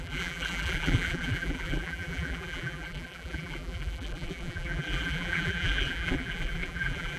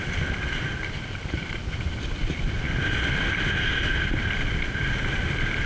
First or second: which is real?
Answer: second